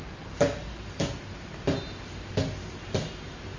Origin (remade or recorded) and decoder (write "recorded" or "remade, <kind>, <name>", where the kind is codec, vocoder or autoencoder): recorded